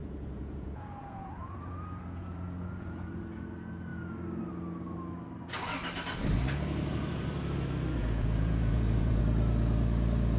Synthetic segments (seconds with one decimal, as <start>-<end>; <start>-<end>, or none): 0.0-3.2; 8.0-9.2